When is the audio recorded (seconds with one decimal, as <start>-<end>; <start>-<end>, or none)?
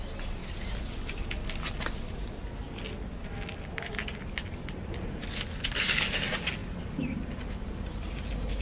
0.0-8.6